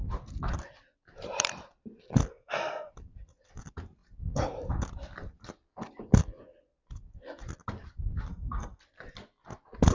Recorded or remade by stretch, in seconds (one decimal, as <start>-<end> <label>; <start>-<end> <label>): 0.0-2.3 recorded; 2.3-2.9 remade; 2.9-8.3 recorded; 8.3-8.8 remade; 8.8-9.9 recorded